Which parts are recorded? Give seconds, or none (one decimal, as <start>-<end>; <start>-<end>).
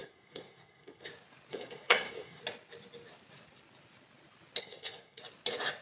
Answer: 1.1-1.5; 2.4-4.6; 5.2-5.8